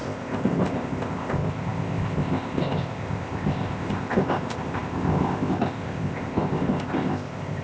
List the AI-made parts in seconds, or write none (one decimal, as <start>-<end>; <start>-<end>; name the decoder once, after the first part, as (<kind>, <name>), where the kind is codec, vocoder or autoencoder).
0.0-7.6 (codec, ZipCodec)